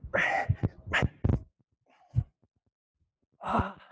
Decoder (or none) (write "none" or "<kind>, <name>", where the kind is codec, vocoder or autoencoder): none